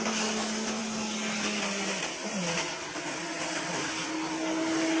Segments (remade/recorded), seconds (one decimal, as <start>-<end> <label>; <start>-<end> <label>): 0.0-5.0 recorded